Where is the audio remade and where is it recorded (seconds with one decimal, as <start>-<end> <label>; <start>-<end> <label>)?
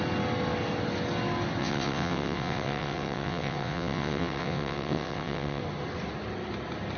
0.0-1.6 recorded; 1.6-5.6 remade; 5.6-7.0 recorded